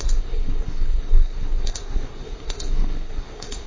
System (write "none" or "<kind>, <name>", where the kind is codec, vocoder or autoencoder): codec, SNAC